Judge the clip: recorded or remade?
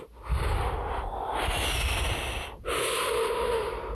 recorded